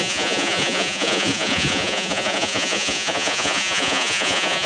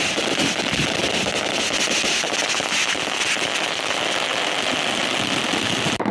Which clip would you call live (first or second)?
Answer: second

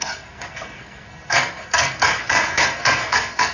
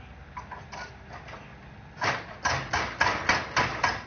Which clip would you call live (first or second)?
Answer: second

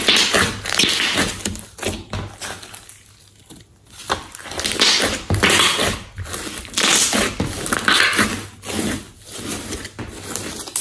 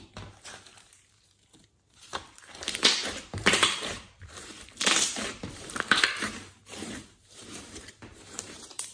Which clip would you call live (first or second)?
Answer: first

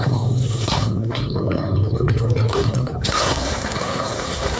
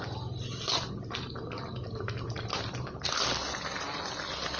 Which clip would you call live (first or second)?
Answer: second